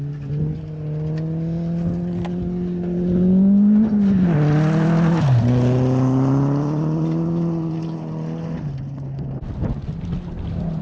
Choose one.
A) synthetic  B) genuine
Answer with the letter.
B